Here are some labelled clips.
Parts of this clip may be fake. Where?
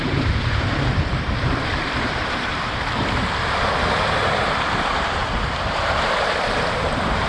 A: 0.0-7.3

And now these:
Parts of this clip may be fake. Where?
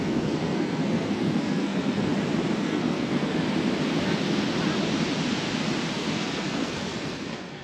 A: 0.0-2.1; 2.6-3.3; 5.9-7.6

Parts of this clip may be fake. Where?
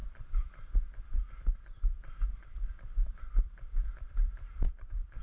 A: none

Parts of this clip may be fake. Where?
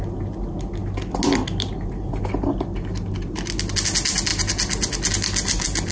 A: none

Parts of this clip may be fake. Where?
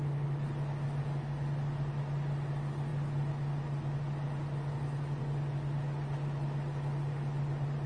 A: none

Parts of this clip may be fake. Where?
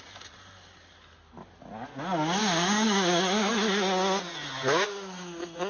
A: 2.4-3.5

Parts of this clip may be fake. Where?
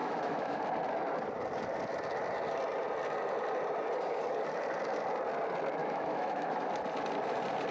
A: 0.0-0.6; 5.8-6.7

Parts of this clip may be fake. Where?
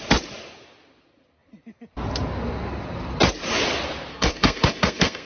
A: 4.1-5.3